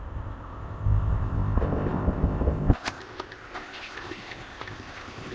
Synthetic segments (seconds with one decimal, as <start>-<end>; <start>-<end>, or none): 0.0-5.3